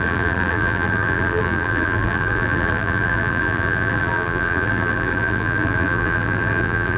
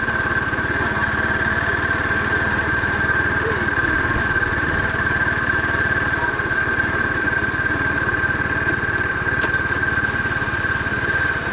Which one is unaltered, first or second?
second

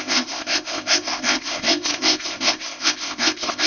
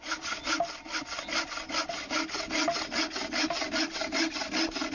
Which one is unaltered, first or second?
second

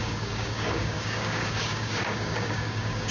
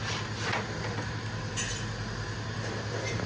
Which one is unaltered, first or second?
second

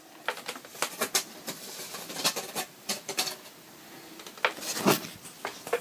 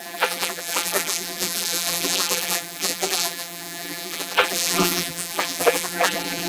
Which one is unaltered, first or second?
first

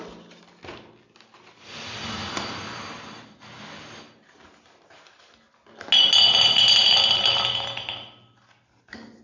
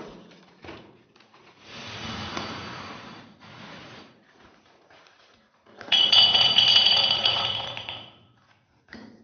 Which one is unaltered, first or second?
first